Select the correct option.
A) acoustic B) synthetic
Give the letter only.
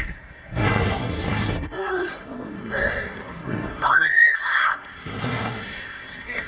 B